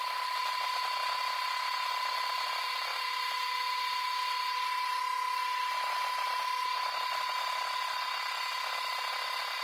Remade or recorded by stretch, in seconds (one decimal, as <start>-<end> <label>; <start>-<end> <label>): 0.0-9.6 recorded